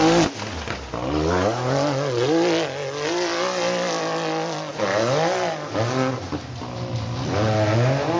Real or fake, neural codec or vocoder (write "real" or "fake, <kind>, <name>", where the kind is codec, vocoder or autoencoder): real